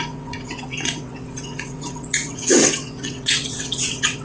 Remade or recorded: remade